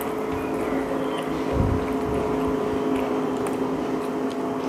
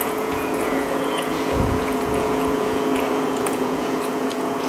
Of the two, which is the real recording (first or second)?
first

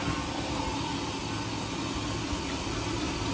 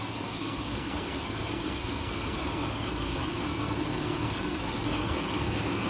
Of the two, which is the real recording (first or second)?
first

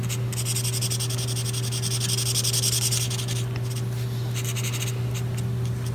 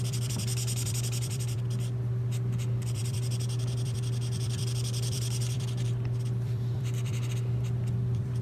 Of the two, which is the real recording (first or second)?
first